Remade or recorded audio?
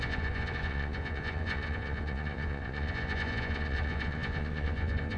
remade